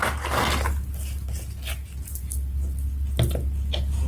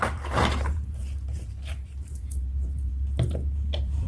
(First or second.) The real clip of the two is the first